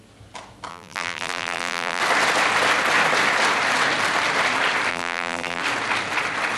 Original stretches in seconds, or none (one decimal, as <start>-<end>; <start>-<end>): 0.0-0.7; 2.0-4.9; 5.6-6.6